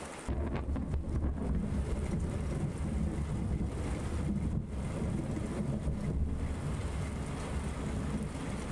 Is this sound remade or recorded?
recorded